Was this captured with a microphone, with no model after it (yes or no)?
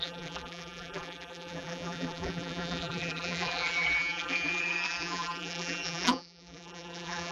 no